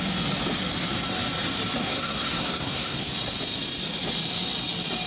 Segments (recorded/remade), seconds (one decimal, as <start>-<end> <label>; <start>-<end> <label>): 0.0-1.8 recorded; 1.8-3.1 remade; 3.1-5.1 recorded